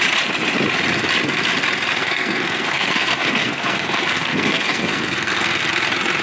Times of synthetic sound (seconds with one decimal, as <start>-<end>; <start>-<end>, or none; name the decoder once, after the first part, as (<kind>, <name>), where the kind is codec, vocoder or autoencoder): 2.0-5.7 (codec, SNAC)